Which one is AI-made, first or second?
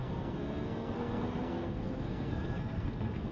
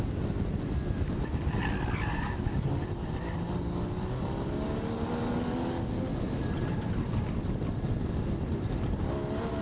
first